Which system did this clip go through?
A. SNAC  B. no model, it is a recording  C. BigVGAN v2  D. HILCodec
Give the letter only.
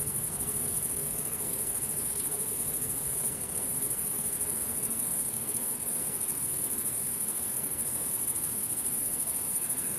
A